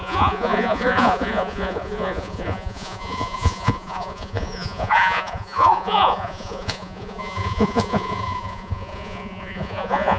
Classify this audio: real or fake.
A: fake